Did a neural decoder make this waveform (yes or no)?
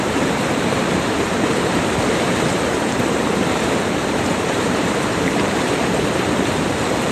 yes